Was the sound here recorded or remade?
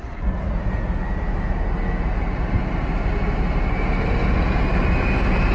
recorded